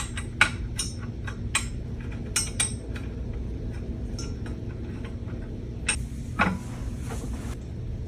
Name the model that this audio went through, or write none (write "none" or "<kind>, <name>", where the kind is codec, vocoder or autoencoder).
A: none